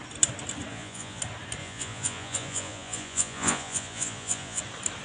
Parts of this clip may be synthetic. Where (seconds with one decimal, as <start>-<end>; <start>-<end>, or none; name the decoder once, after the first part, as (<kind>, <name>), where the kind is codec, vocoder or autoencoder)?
0.7-1.2 (vocoder, Vocos); 1.6-4.6

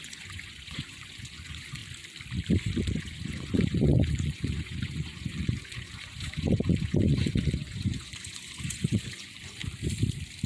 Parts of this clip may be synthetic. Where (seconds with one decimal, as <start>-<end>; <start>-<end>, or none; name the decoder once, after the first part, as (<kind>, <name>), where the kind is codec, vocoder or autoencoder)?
0.0-1.8 (vocoder, Vocos); 2.9-9.6

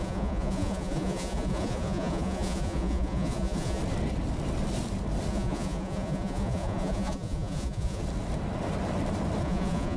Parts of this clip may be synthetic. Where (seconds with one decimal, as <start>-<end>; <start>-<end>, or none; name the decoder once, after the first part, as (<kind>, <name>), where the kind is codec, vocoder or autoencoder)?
0.0-3.8 (vocoder, Vocos); 5.3-8.0; 9.4-10.0

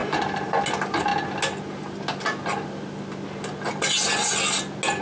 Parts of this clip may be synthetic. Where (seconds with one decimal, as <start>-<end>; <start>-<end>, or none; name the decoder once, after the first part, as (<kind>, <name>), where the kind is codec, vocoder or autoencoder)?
none

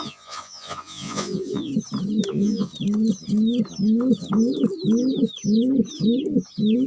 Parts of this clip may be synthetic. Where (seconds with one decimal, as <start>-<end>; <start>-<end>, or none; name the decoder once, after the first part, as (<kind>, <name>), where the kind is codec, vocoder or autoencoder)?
0.0-1.7 (vocoder, Vocos); 2.3-2.7

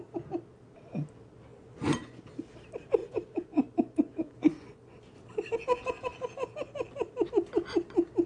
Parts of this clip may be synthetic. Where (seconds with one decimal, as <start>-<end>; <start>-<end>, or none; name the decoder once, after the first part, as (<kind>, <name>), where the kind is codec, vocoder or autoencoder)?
1.5-2.2 (vocoder, Vocos); 3.0-5.0

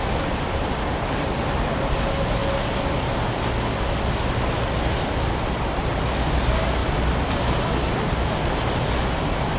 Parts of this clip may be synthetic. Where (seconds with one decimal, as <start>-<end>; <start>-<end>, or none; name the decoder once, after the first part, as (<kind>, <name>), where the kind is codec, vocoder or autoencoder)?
none

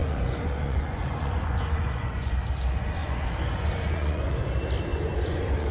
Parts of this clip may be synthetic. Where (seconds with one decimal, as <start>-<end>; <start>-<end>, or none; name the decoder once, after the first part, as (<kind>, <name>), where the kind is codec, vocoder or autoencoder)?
0.0-2.4 (vocoder, Vocos); 3.0-4.4; 4.9-5.7